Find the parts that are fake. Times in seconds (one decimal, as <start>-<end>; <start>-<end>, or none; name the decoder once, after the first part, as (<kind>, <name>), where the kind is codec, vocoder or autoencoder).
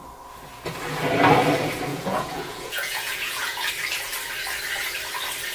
1.9-3.7 (vocoder, Vocos)